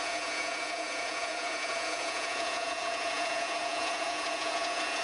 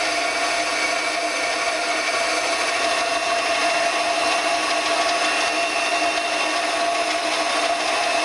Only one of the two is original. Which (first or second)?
second